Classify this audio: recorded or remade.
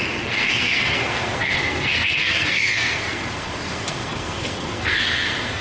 remade